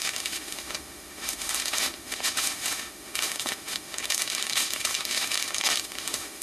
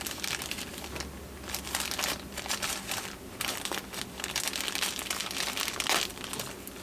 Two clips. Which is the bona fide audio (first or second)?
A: second